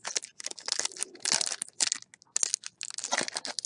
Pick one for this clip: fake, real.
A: real